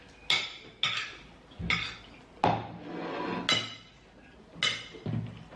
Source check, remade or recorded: recorded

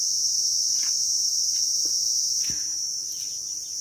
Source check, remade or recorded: recorded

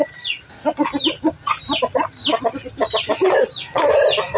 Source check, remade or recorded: recorded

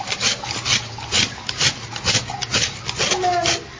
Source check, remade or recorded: recorded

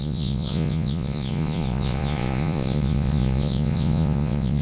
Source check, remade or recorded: remade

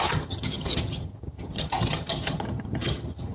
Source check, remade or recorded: remade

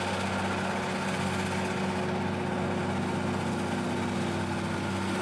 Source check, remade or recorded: recorded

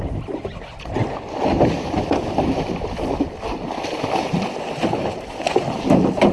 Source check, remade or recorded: recorded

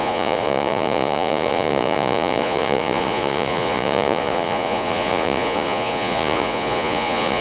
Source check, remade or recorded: remade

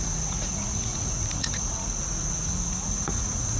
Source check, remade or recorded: remade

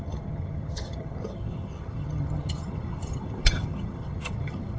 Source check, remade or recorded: remade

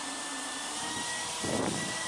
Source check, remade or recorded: remade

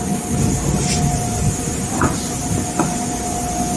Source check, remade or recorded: recorded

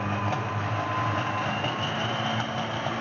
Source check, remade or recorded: recorded